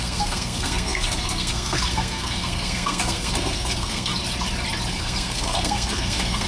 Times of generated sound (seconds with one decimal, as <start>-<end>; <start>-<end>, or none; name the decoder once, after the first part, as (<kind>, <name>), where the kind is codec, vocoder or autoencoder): 0.0-4.1 (codec, SNAC); 4.9-6.5